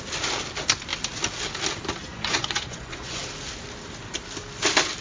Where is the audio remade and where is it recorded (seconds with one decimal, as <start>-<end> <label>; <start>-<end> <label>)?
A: 0.0-2.0 recorded; 2.0-3.2 remade; 3.2-5.0 recorded